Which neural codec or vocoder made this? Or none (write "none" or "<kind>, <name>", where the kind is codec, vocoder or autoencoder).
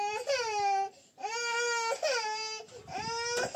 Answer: none